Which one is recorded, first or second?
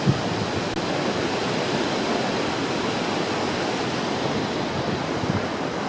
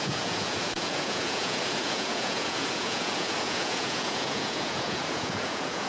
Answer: first